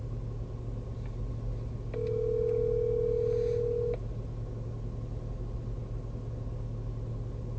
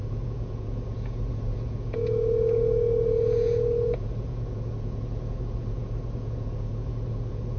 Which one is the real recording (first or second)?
first